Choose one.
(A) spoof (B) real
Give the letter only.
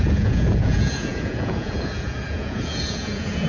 A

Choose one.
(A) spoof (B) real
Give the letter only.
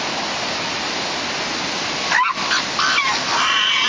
B